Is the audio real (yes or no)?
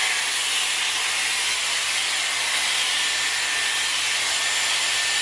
yes